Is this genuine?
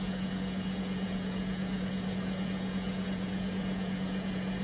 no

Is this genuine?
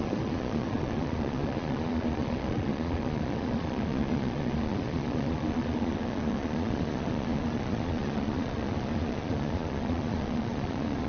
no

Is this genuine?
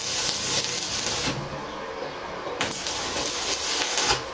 yes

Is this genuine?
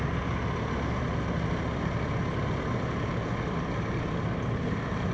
yes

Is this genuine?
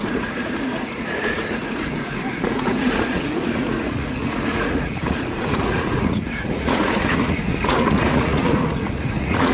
no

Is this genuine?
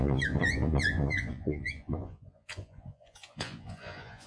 no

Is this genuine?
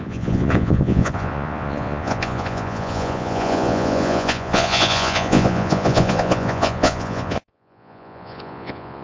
no